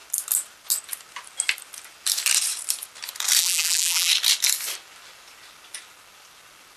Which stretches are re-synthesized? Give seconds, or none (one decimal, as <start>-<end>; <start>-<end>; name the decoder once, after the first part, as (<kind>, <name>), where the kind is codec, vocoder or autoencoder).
3.4-4.1 (vocoder, BigVGAN v2)